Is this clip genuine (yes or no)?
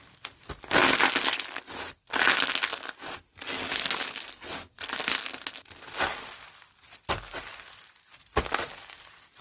yes